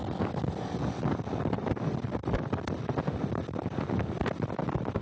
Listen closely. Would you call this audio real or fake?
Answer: real